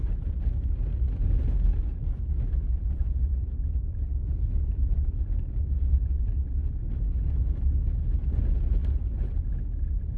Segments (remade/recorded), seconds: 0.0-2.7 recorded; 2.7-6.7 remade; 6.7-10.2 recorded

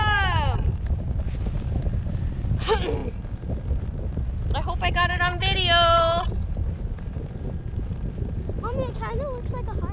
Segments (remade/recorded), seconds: 0.0-9.9 recorded

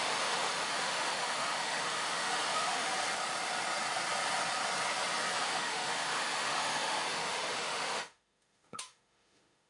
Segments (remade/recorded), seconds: 0.0-2.9 remade; 2.9-5.4 recorded; 5.4-9.7 remade

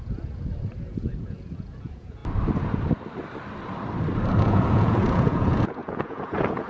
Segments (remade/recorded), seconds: 0.0-2.2 remade; 2.2-4.4 recorded; 4.4-6.7 remade

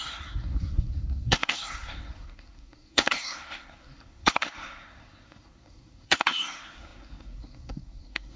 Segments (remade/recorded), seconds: 0.0-8.4 remade